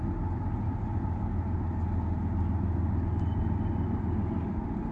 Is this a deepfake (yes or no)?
no